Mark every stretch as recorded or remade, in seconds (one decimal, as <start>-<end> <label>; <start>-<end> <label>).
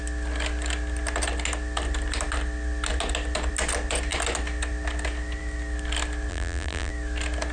0.0-6.3 recorded; 6.3-6.9 remade; 6.9-7.5 recorded